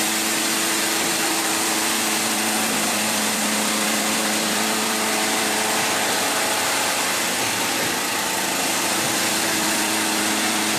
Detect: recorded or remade remade